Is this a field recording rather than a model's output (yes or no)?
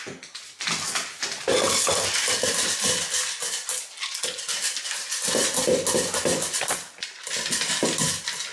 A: yes